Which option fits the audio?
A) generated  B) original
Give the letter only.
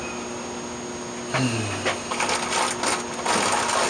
B